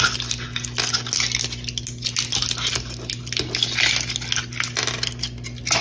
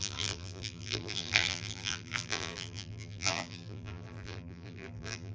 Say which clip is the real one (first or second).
first